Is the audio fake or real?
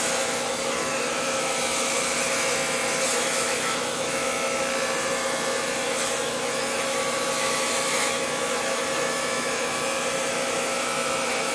fake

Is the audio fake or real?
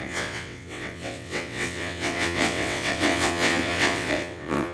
fake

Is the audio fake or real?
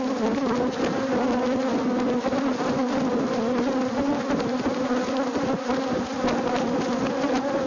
real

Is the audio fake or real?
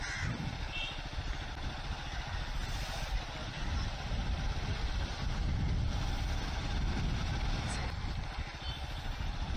real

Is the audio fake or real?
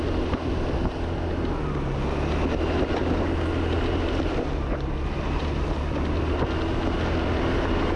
real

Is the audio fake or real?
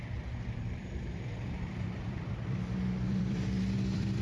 fake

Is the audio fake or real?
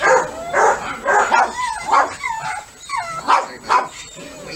real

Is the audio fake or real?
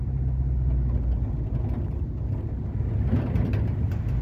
real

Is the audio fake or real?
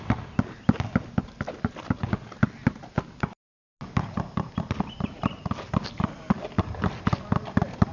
real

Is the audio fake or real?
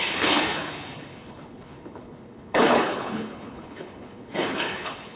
fake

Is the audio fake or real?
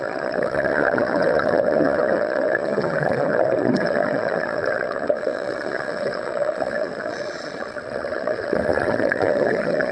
fake